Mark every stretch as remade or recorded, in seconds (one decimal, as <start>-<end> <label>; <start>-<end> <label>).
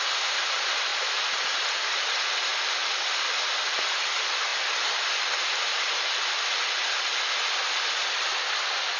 0.0-9.0 recorded